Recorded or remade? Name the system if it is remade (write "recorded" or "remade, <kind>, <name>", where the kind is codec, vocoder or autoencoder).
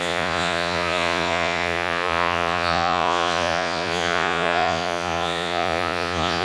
remade, vocoder, Vocos